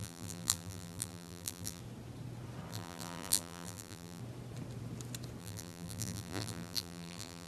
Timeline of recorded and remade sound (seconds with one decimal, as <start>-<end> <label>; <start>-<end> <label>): 0.0-1.8 remade; 1.8-2.7 recorded; 2.7-4.2 remade; 4.2-5.4 recorded; 5.4-7.5 remade